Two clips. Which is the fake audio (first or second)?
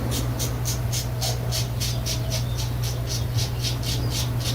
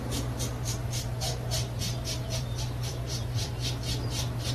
second